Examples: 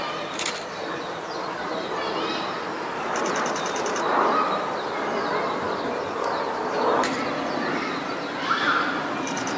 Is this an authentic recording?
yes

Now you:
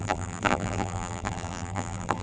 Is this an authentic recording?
no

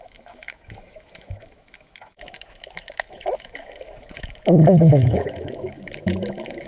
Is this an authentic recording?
no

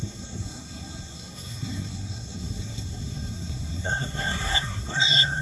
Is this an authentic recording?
no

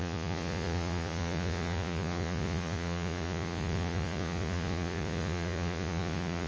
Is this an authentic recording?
no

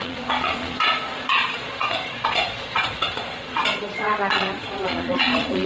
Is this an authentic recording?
no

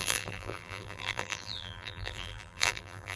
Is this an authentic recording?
no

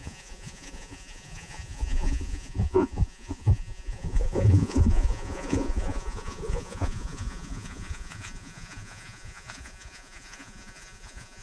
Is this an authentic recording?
no